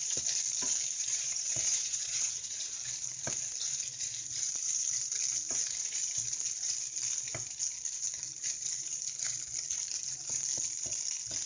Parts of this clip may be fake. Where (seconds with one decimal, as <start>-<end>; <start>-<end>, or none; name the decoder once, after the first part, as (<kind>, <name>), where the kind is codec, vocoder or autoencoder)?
1.1-2.7 (vocoder, WaveNeXt)